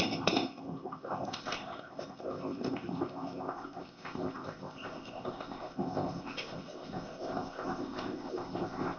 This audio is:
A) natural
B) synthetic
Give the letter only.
B